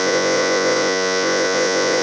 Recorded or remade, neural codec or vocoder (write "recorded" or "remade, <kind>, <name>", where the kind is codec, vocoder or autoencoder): remade, vocoder, Vocos